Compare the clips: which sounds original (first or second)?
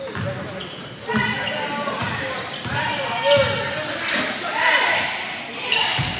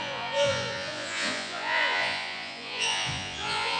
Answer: first